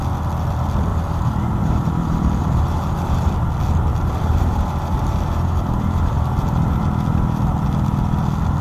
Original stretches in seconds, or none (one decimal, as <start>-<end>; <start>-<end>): 0.0-0.9; 3.3-3.9; 6.8-8.6